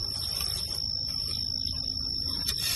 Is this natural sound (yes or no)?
yes